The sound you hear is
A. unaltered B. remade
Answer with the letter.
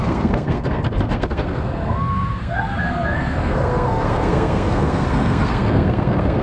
B